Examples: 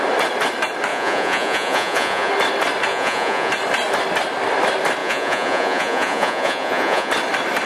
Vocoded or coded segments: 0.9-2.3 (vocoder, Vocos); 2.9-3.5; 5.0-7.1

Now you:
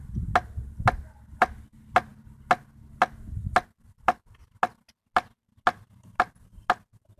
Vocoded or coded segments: none

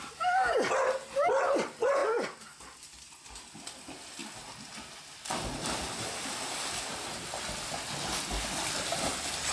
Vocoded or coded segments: none

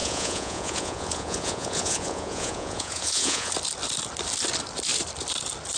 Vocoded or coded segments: 0.0-3.5 (vocoder, Vocos)

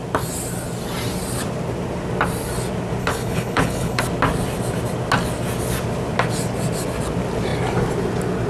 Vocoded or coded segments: 3.0-4.0 (codec, HILCodec)

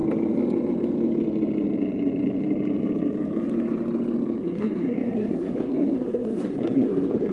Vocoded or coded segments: 4.4-7.3 (codec, SNAC)

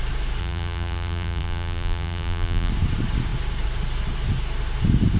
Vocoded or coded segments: 0.4-2.7 (vocoder, BigVGAN v2)